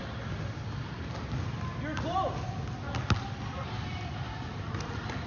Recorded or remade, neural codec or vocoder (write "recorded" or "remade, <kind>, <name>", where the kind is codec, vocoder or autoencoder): recorded